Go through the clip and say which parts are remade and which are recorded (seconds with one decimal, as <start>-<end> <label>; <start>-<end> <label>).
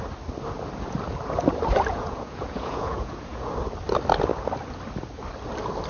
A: 0.0-1.9 recorded; 1.9-3.5 remade; 3.5-5.9 recorded